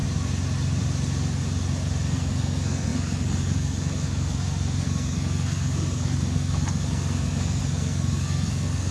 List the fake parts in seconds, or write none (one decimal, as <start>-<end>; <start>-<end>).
2.0-8.9